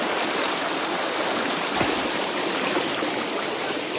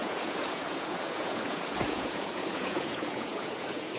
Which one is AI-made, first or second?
second